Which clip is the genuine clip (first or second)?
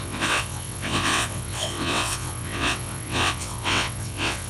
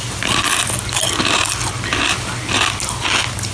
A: second